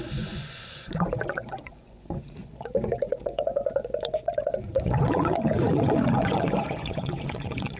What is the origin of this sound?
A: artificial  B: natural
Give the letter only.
A